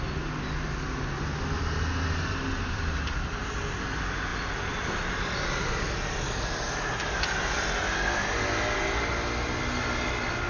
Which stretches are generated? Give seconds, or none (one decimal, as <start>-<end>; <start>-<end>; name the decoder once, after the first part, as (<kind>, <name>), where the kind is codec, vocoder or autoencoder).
none